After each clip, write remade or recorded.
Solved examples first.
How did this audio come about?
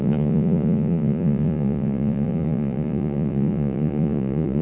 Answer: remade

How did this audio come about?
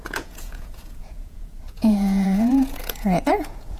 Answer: remade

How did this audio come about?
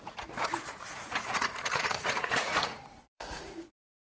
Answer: remade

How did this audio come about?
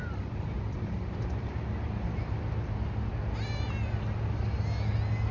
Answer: recorded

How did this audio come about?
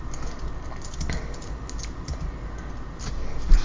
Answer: recorded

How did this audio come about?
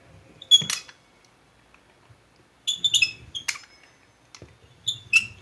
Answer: recorded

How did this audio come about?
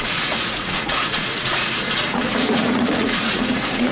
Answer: remade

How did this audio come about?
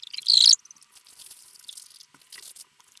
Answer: recorded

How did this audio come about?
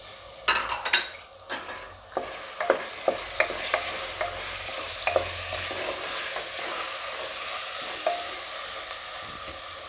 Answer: recorded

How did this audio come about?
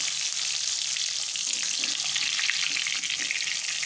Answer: recorded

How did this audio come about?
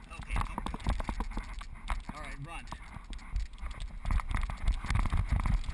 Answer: recorded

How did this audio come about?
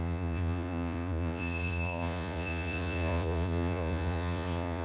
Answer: remade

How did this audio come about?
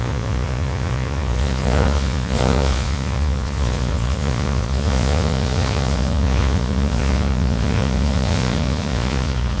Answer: remade